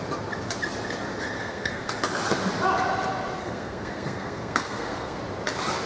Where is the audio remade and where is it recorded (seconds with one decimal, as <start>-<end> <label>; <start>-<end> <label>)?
0.0-1.4 recorded; 1.4-1.9 remade; 1.9-3.4 recorded; 3.4-5.2 remade; 5.2-5.9 recorded